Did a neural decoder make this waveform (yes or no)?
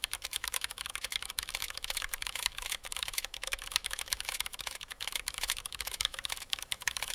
yes